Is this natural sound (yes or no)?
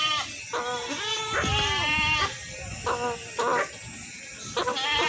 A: yes